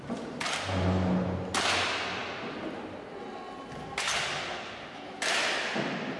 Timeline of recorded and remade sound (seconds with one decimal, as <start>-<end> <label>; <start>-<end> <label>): 0.0-6.2 recorded